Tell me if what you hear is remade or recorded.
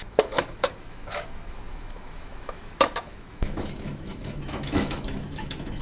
remade